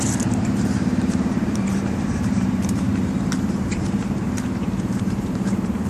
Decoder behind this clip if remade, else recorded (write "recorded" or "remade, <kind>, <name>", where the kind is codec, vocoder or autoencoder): remade, vocoder, BigVGAN v2